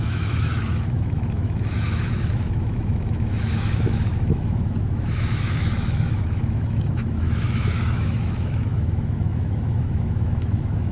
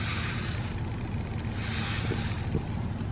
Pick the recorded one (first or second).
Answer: second